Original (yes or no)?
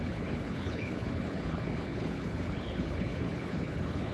no